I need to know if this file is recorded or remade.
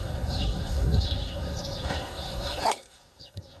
remade